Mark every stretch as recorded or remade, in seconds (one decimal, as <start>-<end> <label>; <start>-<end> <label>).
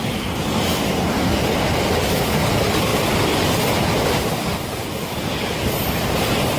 0.0-6.6 recorded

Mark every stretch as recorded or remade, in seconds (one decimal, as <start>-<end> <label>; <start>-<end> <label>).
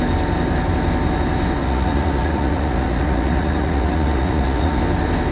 0.0-1.6 recorded; 1.6-4.8 remade; 4.8-5.3 recorded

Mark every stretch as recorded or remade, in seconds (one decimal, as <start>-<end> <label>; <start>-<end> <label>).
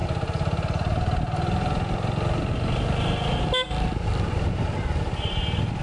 0.0-5.8 recorded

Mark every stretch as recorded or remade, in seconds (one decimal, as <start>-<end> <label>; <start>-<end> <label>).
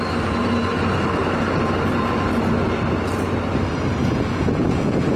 0.0-4.0 recorded; 4.0-5.2 remade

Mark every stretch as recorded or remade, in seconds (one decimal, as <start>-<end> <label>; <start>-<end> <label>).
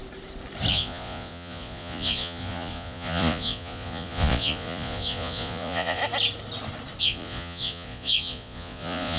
0.0-0.7 recorded; 0.7-6.0 remade; 6.0-7.0 recorded; 7.0-9.2 remade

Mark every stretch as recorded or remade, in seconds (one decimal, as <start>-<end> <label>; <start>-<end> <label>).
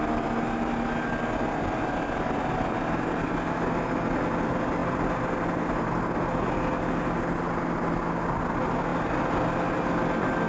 0.0-10.5 recorded